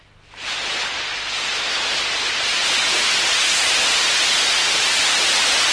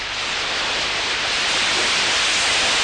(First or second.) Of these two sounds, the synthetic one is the second